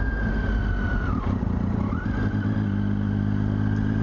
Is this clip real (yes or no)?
yes